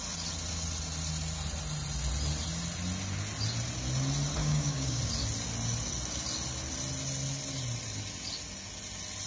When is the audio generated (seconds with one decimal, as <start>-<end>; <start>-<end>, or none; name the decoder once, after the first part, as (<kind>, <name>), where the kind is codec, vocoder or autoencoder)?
4.4-5.0 (codec, DAC)